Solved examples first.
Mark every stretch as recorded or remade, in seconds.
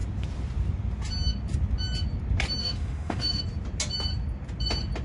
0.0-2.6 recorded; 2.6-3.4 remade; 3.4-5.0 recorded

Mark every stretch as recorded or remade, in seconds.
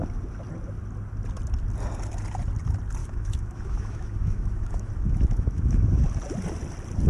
0.0-3.0 recorded; 3.0-5.8 remade; 5.8-7.1 recorded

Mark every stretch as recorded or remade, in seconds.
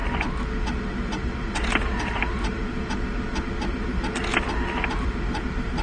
0.0-1.4 recorded; 1.4-2.7 remade; 2.7-3.7 recorded; 3.7-4.3 remade; 4.3-4.9 recorded; 4.9-5.8 remade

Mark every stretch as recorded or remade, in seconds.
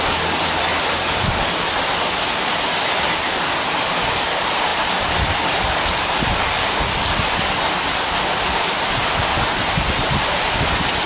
0.0-11.1 recorded